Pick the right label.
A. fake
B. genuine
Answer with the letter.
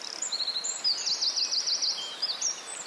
B